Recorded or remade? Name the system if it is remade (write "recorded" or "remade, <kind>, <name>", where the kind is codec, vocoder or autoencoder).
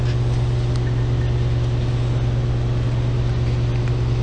recorded